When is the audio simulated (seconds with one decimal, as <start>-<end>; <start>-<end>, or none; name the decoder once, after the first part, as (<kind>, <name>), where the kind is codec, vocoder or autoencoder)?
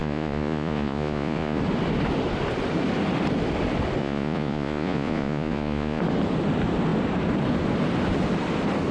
0.0-1.6 (vocoder, Vocos); 4.0-6.0